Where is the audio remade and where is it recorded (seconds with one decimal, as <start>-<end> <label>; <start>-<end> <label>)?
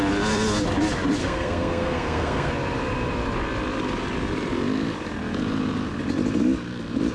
0.0-1.2 recorded; 1.2-2.5 remade; 2.5-7.1 recorded